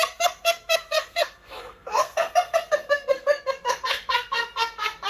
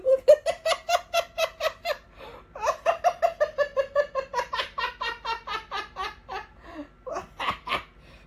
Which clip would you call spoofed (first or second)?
first